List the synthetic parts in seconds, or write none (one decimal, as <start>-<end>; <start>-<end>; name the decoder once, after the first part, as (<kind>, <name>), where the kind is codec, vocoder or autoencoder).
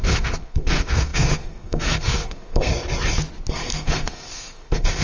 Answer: 0.0-2.7 (codec, SNAC); 3.5-5.0